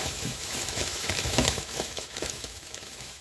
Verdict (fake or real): fake